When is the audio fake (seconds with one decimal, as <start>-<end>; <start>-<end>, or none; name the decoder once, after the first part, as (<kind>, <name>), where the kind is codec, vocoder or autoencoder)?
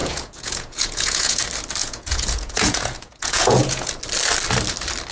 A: 0.0-1.4 (vocoder, Vocos); 1.8-3.9